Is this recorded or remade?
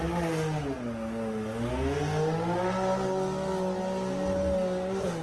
recorded